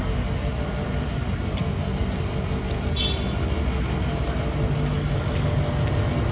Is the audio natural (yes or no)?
yes